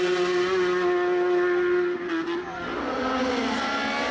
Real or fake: real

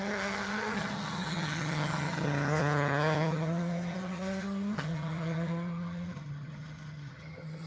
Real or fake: fake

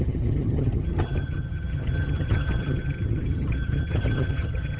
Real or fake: fake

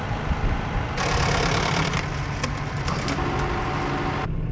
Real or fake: real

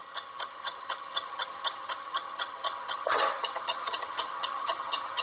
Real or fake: fake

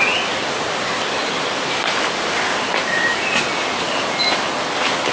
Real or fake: real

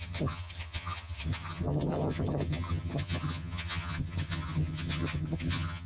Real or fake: fake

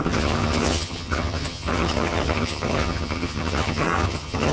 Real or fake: fake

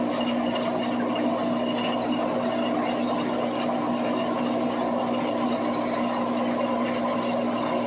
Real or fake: real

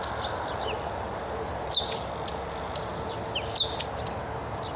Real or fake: real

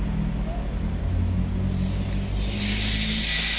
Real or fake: real